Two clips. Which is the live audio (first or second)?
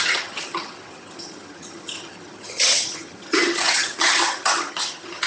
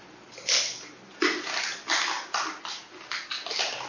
second